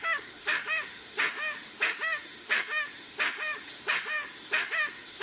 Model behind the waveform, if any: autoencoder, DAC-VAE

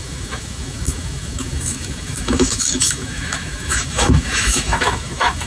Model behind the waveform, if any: autoencoder, DAC-VAE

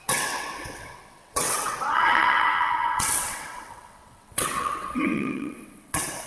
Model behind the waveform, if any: vocoder, WaveNeXt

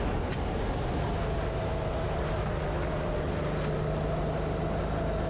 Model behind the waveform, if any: none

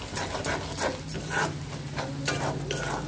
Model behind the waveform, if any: none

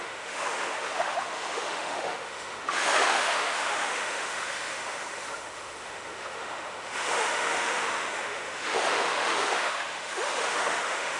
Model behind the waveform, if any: autoencoder, DAC-VAE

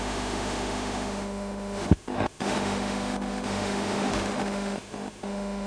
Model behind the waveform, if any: autoencoder, DAC-VAE